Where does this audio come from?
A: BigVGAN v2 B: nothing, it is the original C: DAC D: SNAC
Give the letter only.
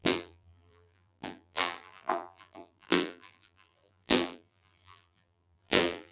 A